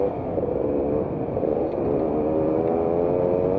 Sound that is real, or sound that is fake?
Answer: real